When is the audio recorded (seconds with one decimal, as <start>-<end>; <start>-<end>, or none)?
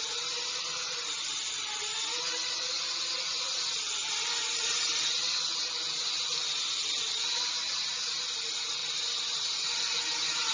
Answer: 0.0-8.8; 9.8-10.5